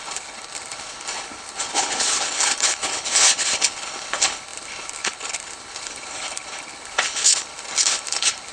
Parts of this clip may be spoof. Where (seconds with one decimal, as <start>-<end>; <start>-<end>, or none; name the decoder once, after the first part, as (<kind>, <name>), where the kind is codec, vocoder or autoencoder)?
0.0-8.5 (codec, HILCodec)